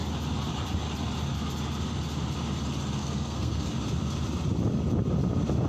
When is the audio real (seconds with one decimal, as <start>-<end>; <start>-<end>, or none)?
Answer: 0.0-3.0; 3.7-5.7